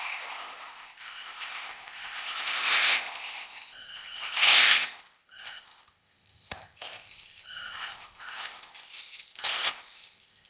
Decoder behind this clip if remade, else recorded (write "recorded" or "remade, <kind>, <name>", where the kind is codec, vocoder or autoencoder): remade, codec, ZipCodec